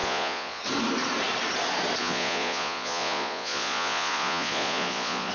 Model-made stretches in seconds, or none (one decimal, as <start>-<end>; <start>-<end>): 0.0-0.6; 2.0-5.3